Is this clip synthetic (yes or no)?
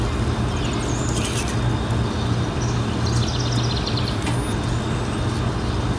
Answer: no